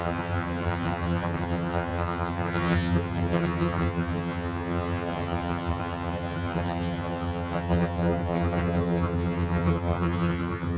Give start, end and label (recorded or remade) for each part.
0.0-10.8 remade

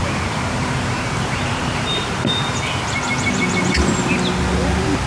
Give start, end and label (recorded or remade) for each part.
0.0-3.0 remade; 3.0-5.1 recorded